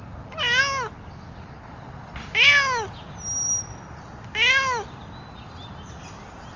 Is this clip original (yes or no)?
yes